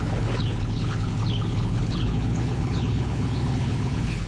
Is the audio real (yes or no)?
no